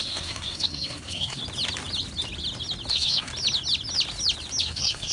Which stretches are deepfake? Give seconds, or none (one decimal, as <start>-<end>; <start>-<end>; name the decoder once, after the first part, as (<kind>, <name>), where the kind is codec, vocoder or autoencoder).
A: 0.0-1.4 (codec, SNAC); 2.9-3.3; 4.6-5.1